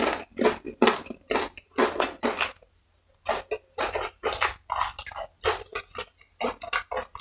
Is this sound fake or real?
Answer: real